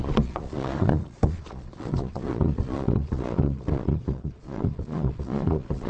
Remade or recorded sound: remade